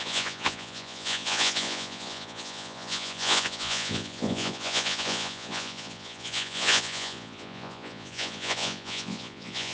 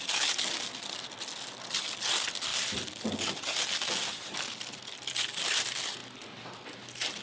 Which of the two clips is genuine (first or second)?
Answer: second